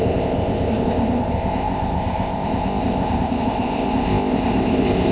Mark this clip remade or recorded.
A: remade